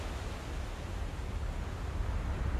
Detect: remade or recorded recorded